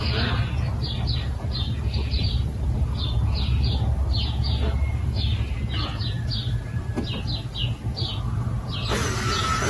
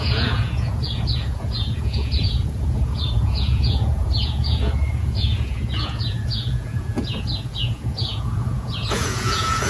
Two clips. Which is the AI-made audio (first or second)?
second